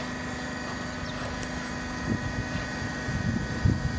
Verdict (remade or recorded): recorded